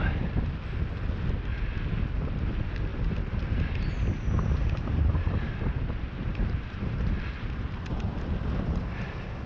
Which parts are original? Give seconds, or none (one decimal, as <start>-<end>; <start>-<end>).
0.0-4.6; 7.1-9.5